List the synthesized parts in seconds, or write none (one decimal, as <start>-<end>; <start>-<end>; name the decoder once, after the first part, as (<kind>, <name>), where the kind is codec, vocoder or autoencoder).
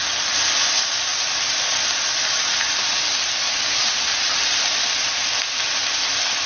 none